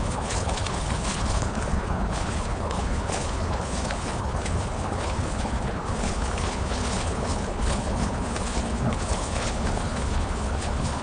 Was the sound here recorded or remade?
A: remade